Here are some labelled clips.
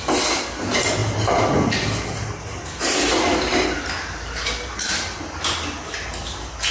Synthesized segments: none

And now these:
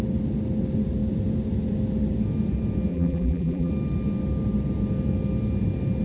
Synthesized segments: 2.9-3.7 (vocoder, BigVGAN v2)